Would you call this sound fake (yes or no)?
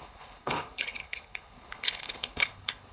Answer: yes